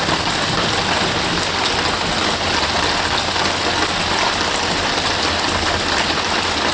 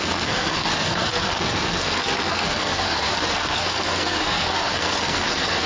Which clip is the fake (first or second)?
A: second